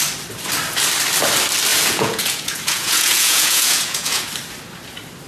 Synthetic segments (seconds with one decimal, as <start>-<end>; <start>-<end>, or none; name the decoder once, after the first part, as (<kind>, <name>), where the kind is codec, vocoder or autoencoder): 1.7-4.2 (vocoder, Vocos)